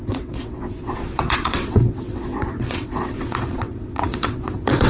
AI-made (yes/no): yes